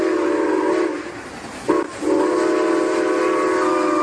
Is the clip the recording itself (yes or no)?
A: yes